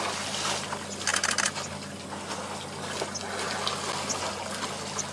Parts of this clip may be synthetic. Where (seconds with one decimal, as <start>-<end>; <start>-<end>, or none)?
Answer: none